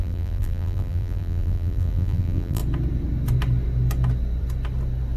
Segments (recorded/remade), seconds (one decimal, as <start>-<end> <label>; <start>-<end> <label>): 0.0-2.6 remade; 2.6-5.2 recorded